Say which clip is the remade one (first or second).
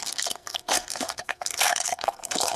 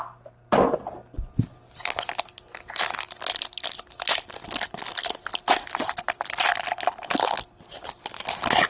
first